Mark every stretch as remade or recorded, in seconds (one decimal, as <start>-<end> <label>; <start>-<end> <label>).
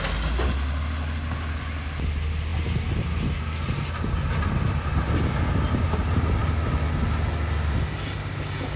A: 0.0-8.8 recorded